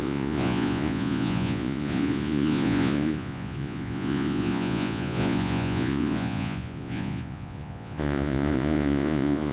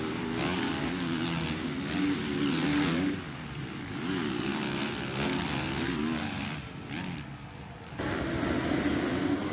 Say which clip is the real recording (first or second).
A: second